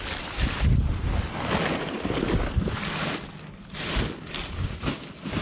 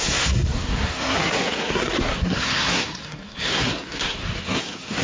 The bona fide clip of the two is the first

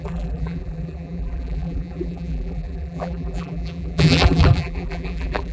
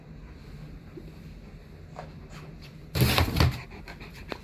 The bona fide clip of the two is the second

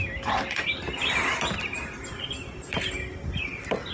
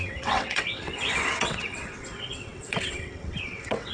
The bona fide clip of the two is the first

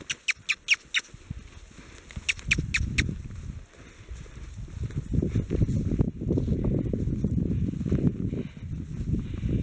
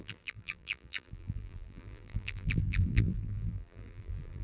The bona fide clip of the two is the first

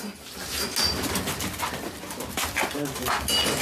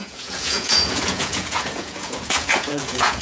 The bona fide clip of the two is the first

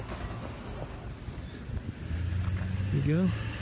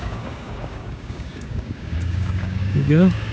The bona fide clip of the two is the first